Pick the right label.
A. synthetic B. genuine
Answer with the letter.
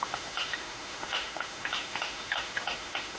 A